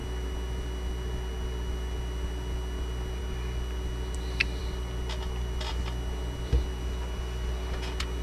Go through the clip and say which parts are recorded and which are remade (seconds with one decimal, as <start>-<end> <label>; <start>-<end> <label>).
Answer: 0.0-8.2 recorded